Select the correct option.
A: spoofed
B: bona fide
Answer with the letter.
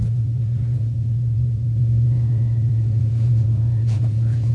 A